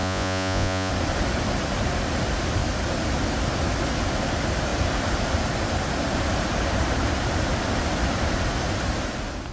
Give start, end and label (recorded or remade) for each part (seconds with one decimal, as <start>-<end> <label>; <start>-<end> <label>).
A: 0.0-0.9 remade; 0.9-9.5 recorded